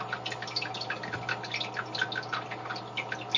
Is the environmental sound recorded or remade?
recorded